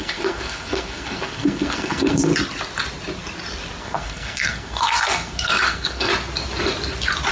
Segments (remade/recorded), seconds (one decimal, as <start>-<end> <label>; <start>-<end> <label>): 0.0-2.3 remade; 2.3-3.8 recorded; 3.8-6.1 remade; 6.1-7.3 recorded